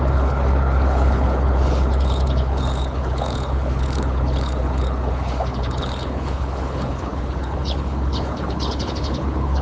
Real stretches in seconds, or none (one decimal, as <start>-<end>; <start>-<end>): none